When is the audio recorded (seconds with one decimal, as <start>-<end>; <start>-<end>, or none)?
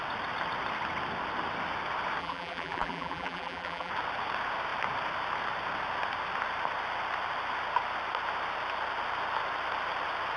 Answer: 0.0-2.2; 3.9-10.4